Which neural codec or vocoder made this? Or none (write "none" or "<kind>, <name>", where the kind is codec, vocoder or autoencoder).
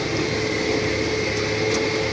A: none